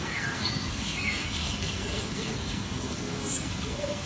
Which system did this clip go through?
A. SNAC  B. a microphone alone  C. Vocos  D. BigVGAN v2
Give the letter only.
A